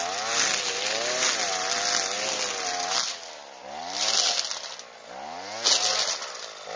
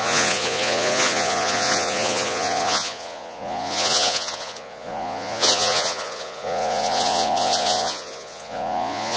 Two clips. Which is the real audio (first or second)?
first